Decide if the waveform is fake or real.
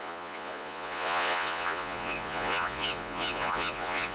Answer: fake